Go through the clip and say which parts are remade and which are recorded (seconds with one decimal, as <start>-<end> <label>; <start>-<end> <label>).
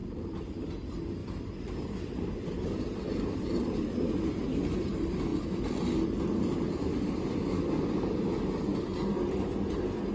0.0-0.6 remade; 0.6-1.2 recorded; 1.2-4.1 remade; 4.1-10.1 recorded